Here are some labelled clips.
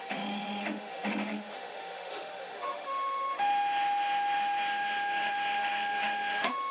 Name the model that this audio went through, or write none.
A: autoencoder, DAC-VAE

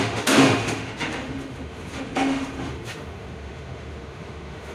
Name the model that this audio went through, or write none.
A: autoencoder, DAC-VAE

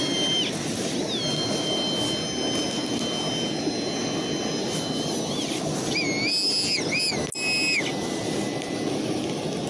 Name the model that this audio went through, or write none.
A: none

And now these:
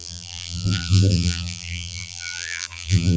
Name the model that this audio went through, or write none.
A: vocoder, BigVGAN v2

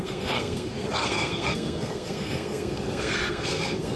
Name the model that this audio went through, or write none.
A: codec, SNAC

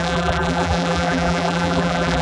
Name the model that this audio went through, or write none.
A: vocoder, BigVGAN v2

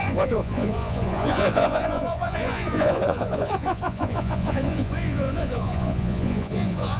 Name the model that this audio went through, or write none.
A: vocoder, Vocos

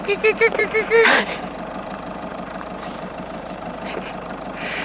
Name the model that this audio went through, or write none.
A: vocoder, BigVGAN v2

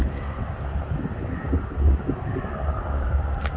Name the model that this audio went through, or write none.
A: none